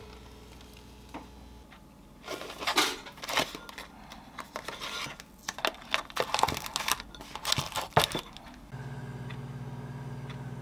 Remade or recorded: recorded